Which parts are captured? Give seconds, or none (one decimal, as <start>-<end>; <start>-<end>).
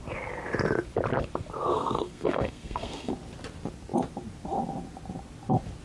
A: 0.0-1.7; 3.1-5.8